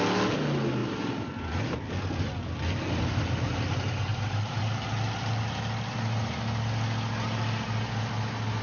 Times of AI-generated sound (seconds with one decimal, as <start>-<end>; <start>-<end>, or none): 0.8-1.9; 4.1-4.6